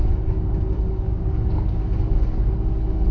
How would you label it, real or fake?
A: fake